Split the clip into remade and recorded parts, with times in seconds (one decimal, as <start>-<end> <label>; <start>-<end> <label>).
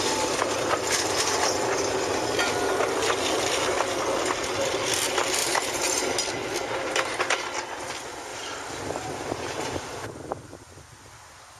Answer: 0.0-5.4 recorded; 5.4-6.2 remade; 6.2-11.6 recorded